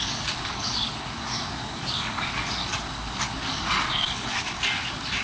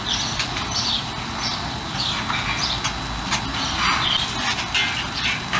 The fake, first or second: first